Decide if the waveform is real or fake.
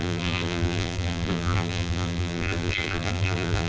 fake